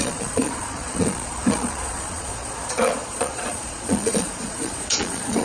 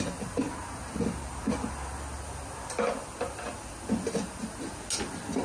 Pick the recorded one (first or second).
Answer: second